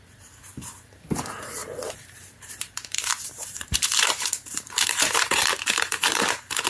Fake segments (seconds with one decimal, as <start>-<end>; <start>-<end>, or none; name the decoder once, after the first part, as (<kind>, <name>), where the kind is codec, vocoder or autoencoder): 0.0-6.7 (vocoder, BigVGAN v2)